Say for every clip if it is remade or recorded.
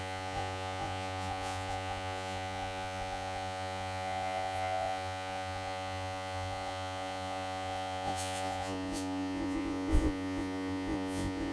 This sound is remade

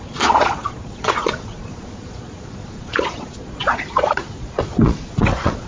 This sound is remade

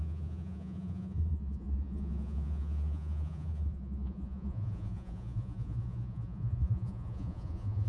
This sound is remade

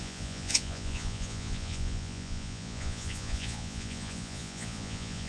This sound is remade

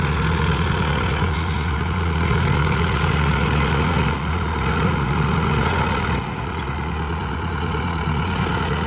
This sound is remade